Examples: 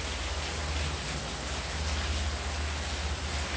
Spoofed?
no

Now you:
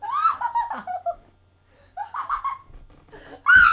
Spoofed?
no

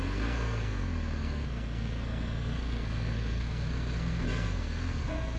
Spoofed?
yes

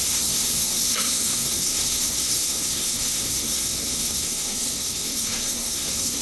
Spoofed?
yes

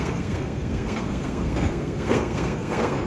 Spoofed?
yes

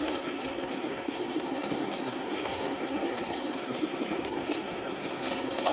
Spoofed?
yes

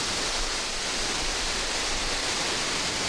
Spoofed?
no